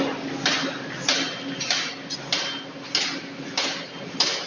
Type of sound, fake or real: real